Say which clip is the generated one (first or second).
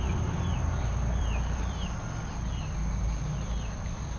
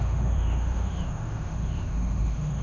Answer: second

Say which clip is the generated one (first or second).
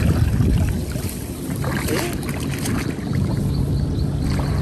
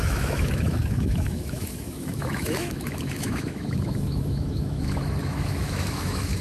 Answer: second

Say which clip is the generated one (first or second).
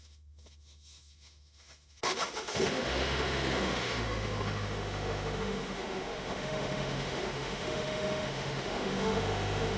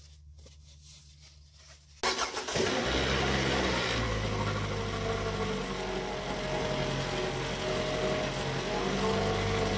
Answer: first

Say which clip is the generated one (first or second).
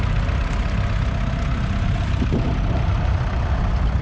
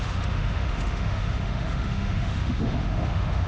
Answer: second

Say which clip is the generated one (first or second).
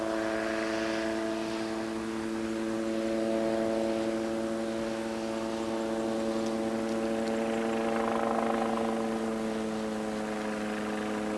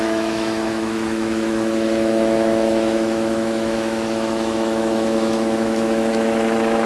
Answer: second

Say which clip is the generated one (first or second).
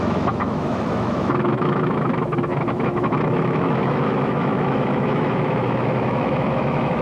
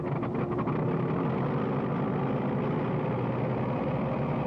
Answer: first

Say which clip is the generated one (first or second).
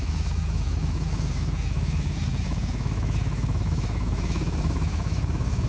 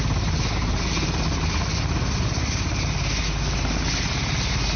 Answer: first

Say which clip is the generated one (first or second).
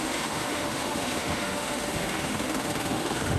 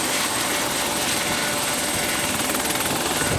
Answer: first